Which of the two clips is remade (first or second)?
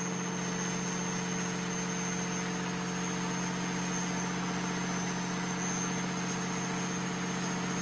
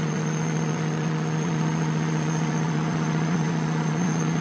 second